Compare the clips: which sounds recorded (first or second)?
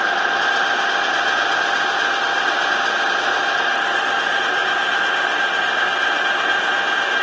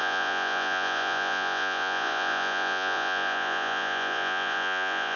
first